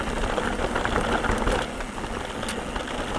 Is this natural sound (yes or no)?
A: yes